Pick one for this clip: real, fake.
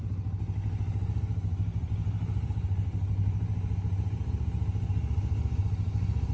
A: real